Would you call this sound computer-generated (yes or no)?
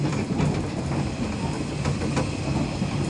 no